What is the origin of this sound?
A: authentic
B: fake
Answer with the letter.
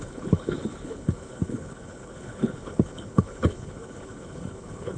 B